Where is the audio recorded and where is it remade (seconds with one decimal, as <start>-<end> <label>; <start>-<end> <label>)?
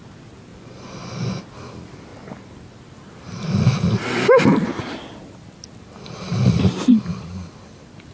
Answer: 0.0-0.5 recorded; 0.5-1.4 remade; 1.4-8.1 recorded